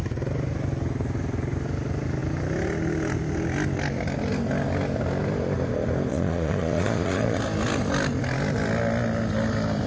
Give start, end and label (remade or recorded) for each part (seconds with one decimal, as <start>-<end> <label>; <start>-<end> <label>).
0.0-6.1 recorded; 6.1-7.4 remade; 7.4-9.9 recorded